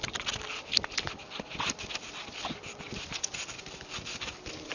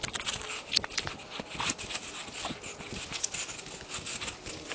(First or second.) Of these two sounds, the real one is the second